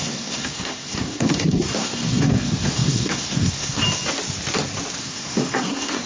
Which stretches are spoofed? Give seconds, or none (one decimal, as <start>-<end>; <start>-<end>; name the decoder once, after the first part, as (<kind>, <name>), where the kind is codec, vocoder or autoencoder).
0.0-3.8 (codec, SNAC); 5.0-6.1